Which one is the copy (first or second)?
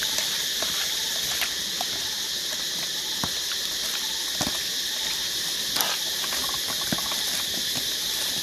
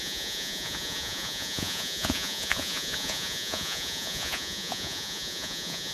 second